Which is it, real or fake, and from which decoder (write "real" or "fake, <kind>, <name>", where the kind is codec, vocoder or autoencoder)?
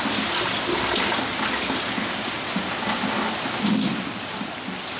real